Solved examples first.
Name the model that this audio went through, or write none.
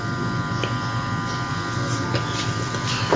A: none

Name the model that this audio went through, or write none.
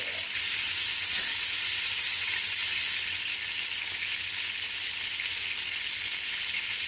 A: none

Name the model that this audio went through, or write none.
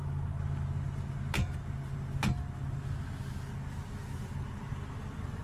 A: none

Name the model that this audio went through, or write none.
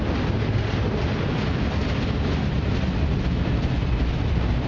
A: none